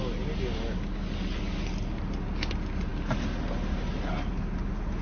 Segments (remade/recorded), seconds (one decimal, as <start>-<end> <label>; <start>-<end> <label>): 0.0-5.0 recorded